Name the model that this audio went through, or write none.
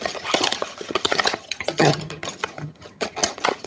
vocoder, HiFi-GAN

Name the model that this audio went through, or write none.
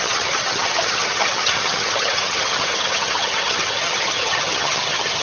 vocoder, HiFi-GAN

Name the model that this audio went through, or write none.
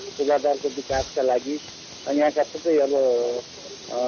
none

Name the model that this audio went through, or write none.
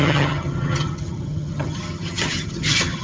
vocoder, HiFi-GAN